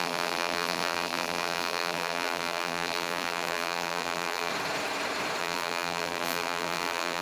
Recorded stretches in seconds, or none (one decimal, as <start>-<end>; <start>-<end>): 4.5-5.4